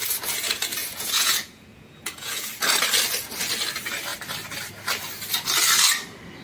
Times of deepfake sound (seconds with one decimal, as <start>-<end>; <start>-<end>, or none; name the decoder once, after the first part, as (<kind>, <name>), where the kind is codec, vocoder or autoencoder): 0.8-2.5 (vocoder, Vocos)